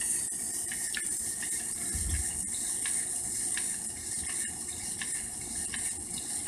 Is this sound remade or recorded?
recorded